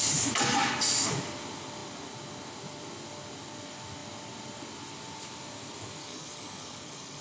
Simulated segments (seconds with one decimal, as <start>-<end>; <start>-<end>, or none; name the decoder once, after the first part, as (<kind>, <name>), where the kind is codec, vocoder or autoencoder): 6.0-7.2 (codec, DAC)